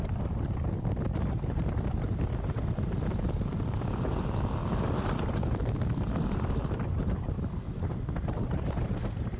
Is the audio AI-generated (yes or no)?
no